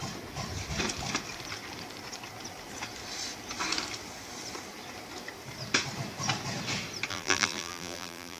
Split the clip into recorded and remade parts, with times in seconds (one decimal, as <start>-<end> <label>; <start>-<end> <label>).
0.0-7.1 recorded; 7.1-8.4 remade